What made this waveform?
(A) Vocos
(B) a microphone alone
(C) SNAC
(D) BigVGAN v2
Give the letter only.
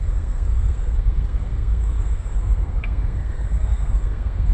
C